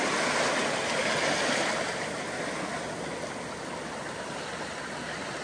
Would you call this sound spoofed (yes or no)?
no